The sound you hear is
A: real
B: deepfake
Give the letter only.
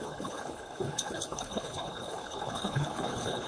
B